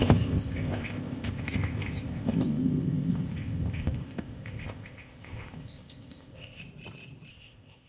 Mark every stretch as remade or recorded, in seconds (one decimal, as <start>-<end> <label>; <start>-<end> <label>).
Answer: 0.0-6.6 remade; 6.6-7.3 recorded; 7.3-7.9 remade

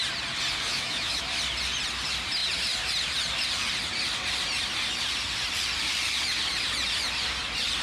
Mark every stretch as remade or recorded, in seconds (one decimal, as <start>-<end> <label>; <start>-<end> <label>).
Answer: 0.0-0.7 recorded; 0.7-1.2 remade; 1.2-7.8 recorded

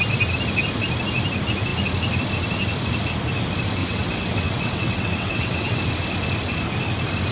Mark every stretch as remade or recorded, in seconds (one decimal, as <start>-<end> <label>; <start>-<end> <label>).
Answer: 0.0-3.8 recorded; 3.8-5.8 remade; 5.8-7.3 recorded

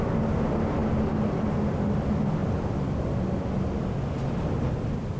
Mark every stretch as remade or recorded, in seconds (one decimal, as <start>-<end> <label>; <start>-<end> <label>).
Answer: 0.0-5.2 recorded

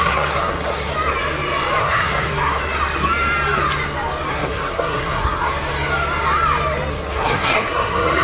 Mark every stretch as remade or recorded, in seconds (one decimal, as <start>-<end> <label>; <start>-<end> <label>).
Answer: 0.0-0.9 remade; 0.9-1.8 recorded; 1.8-2.6 remade; 2.6-4.3 recorded; 4.3-5.5 remade; 5.5-6.9 recorded; 6.9-8.2 remade

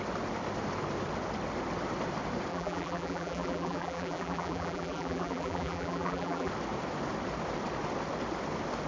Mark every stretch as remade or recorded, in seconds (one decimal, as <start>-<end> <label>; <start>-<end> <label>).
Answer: 0.0-2.5 recorded; 2.5-6.5 remade; 6.5-8.9 recorded

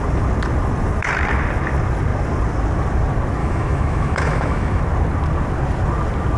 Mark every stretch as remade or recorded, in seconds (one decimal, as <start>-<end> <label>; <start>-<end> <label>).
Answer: 0.0-3.4 recorded; 3.4-4.8 remade; 4.8-6.4 recorded